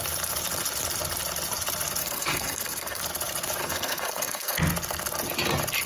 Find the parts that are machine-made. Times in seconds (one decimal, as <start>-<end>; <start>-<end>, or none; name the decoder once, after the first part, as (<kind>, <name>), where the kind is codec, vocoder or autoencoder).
2.0-3.0 (codec, SNAC); 3.6-4.6